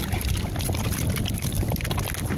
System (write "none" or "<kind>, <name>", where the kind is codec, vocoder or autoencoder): none